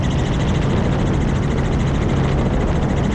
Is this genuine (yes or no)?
yes